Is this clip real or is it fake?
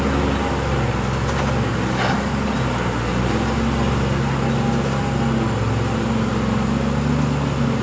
real